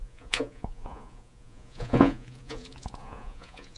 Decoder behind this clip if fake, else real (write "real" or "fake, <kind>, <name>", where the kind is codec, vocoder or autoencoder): fake, vocoder, Vocos